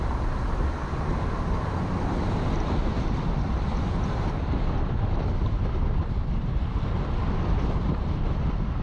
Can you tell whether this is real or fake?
fake